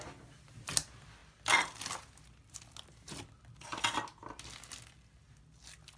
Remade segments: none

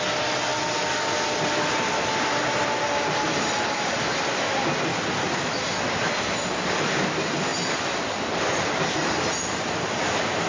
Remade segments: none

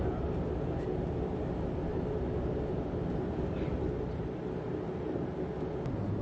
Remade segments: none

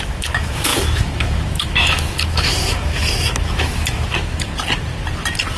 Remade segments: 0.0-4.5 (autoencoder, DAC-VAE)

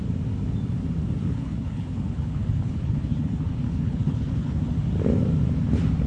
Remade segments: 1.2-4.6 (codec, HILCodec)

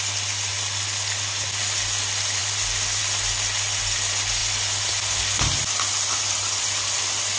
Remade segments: none

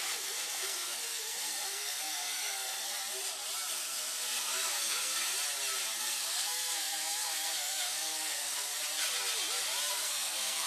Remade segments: 0.0-2.9 (codec, SNAC); 3.7-5.3; 6.0-8.7; 9.9-10.7

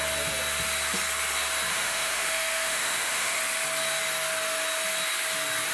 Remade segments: 1.7-3.4 (autoencoder, DAC-VAE)